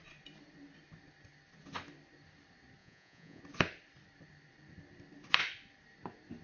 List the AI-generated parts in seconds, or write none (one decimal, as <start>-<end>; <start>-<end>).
2.8-3.4